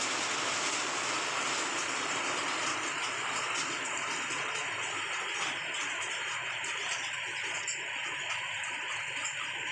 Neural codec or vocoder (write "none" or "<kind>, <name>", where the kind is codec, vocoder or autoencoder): none